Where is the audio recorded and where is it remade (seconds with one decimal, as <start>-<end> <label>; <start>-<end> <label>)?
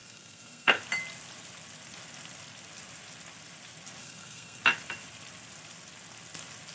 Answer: 0.0-0.8 remade; 0.8-4.0 recorded; 4.0-4.6 remade; 4.6-6.7 recorded